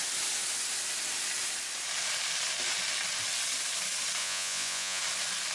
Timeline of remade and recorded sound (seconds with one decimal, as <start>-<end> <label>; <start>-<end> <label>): 0.0-4.2 recorded; 4.2-5.0 remade; 5.0-5.5 recorded